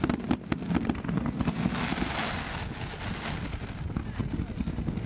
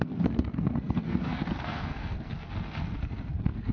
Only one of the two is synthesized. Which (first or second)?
second